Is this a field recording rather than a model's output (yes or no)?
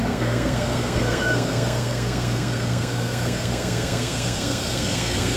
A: no